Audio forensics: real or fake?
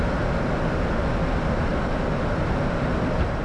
real